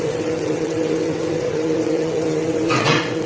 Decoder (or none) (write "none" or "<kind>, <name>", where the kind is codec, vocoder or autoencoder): vocoder, WaveNeXt